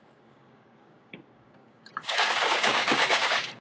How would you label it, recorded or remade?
remade